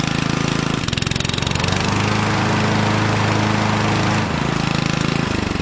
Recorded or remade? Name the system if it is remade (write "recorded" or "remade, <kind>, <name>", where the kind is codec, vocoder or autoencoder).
recorded